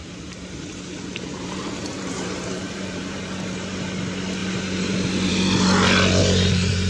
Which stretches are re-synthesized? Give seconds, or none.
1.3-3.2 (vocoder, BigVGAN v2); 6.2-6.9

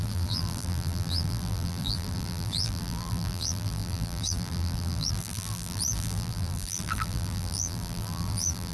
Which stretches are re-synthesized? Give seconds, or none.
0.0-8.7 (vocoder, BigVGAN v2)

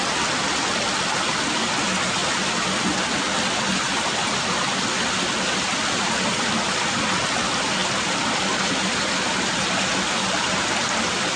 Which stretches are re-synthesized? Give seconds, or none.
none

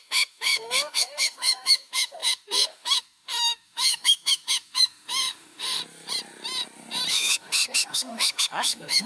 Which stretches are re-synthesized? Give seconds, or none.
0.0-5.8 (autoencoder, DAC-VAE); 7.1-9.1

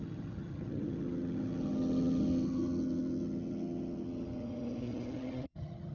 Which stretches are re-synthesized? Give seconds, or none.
0.0-5.9 (vocoder, HiFi-GAN)